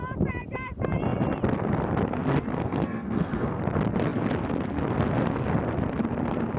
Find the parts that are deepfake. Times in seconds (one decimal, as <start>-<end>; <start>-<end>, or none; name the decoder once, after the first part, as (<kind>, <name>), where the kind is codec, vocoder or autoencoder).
2.5-3.6 (codec, SNAC)